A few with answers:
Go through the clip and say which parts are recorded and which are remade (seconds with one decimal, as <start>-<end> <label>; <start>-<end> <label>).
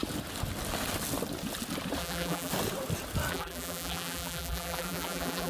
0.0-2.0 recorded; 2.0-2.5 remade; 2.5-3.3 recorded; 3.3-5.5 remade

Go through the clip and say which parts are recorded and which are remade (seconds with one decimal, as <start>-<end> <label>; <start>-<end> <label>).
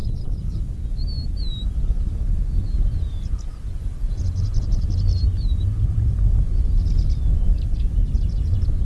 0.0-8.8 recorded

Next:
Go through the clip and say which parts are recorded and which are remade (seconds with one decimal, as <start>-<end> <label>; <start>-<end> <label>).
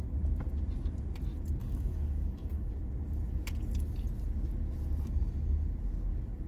0.0-1.6 recorded; 1.6-2.7 remade; 2.7-6.5 recorded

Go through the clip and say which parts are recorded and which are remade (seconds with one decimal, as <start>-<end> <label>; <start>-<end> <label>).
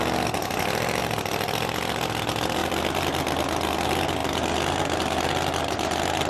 0.0-1.0 recorded; 1.0-2.2 remade; 2.2-2.6 recorded; 2.6-3.7 remade; 3.7-6.3 recorded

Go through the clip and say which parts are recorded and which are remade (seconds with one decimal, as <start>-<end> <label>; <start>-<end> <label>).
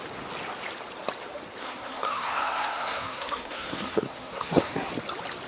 0.0-1.6 recorded; 1.6-4.9 remade; 4.9-5.5 recorded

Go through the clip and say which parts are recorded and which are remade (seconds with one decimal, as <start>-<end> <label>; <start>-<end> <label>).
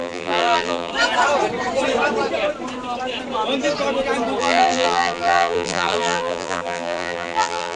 0.0-0.9 remade; 0.9-4.4 recorded; 4.4-7.8 remade